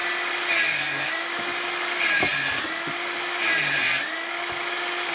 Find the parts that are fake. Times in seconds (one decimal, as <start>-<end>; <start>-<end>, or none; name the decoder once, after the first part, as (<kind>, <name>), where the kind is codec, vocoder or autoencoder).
none